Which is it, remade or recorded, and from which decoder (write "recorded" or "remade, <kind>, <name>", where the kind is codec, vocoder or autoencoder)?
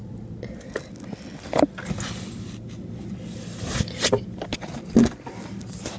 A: recorded